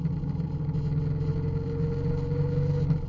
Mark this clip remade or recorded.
recorded